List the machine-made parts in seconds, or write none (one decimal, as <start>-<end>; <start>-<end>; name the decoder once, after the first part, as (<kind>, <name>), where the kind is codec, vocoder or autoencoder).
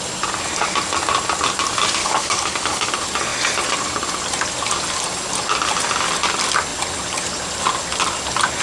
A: 2.0-2.9 (codec, DAC)